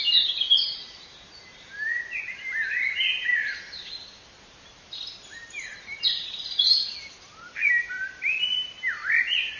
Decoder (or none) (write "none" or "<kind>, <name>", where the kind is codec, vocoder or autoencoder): vocoder, BigVGAN v2